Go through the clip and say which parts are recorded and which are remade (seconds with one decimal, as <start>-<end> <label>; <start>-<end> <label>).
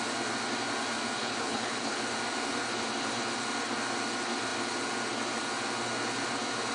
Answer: 0.0-1.2 recorded; 1.2-2.0 remade; 2.0-6.7 recorded